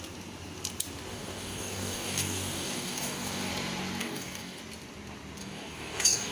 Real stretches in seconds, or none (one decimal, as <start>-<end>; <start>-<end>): 0.0-1.1; 3.5-4.0; 4.6-5.4